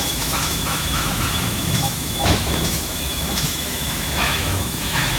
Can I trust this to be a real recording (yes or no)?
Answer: no